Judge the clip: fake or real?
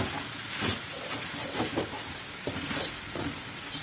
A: real